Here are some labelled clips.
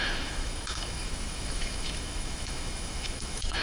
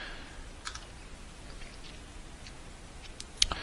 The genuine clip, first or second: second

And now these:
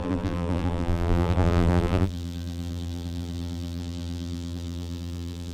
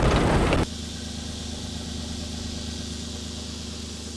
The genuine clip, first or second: second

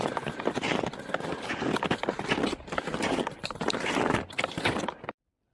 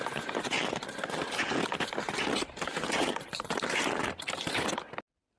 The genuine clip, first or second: second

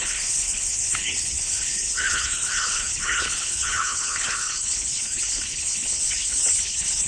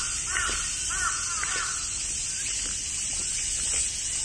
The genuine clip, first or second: second